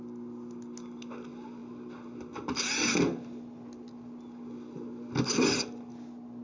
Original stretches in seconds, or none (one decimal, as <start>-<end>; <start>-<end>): 0.0-6.4